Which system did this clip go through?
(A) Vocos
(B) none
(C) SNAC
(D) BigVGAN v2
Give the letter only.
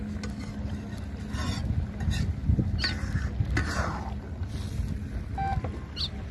B